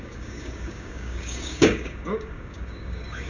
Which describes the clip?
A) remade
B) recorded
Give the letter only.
A